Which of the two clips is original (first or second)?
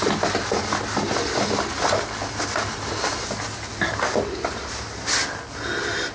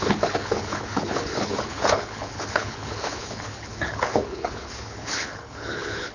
first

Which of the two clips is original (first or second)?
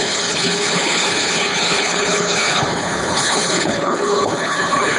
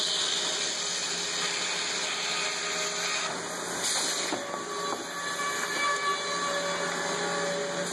second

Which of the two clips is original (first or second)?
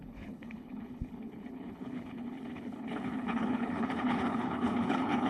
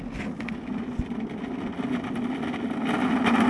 second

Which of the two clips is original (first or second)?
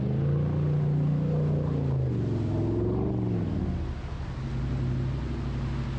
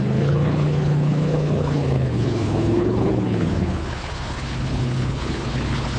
first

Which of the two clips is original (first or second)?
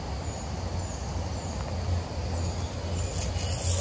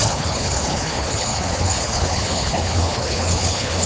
first